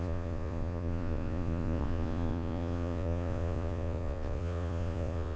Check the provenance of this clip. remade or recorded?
remade